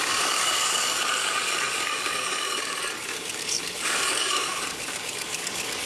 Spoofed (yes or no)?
yes